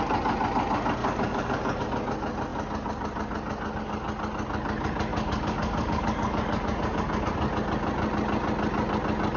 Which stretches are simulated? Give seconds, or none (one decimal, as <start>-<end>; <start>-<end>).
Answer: 1.0-1.8; 5.1-7.2